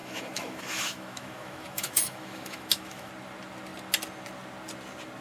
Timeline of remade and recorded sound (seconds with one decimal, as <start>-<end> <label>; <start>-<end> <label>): 0.0-3.1 remade; 3.1-5.2 recorded